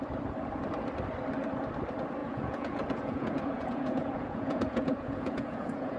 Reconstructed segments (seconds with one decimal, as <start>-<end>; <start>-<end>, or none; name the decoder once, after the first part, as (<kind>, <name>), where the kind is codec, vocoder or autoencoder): 2.2-6.0 (vocoder, Vocos)